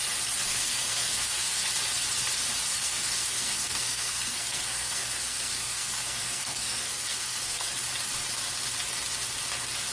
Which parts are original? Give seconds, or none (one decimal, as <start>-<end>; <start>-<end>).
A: 0.0-0.4; 1.6-2.7; 7.7-9.9